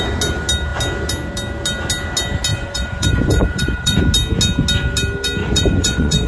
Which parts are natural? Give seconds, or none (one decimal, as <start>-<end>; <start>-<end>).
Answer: 0.0-2.5; 4.0-5.4